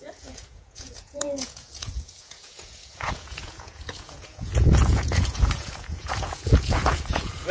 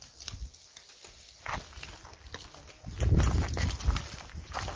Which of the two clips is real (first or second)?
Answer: second